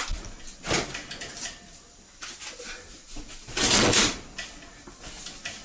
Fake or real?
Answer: real